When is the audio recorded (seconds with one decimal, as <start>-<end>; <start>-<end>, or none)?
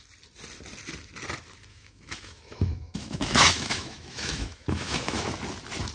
0.0-1.7; 5.2-5.9